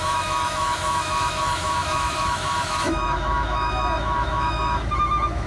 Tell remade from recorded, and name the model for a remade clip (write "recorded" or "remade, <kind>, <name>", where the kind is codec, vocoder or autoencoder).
remade, autoencoder, DAC-VAE